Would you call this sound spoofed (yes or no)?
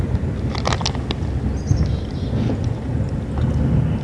no